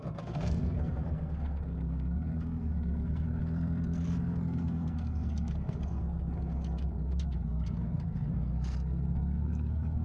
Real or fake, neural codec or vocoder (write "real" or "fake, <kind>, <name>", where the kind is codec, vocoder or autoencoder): fake, codec, SNAC